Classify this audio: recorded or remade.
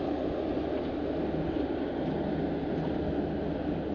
recorded